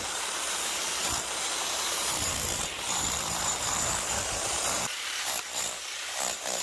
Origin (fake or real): fake